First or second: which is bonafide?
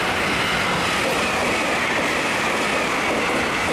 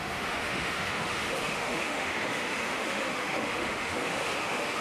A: first